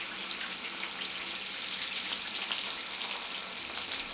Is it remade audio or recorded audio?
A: recorded